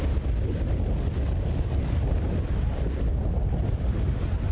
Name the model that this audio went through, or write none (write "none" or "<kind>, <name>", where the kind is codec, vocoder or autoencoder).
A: none